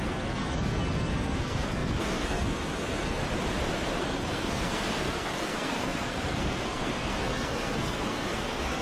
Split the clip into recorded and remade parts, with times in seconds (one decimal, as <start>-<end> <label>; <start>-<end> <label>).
0.0-3.2 remade; 3.2-4.0 recorded; 4.0-8.8 remade